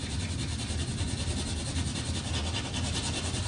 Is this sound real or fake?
real